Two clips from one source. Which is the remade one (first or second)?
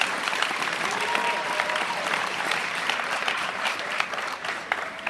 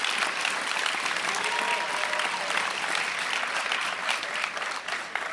first